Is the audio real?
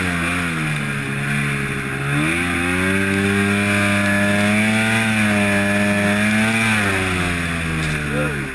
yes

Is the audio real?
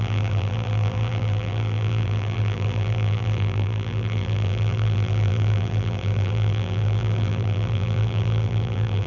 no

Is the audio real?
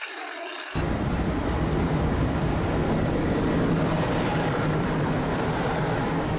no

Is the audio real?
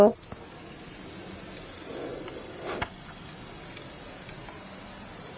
yes